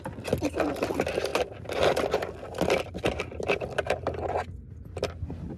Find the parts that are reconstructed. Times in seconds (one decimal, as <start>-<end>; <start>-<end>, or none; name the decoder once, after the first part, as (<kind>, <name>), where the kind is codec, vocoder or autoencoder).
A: none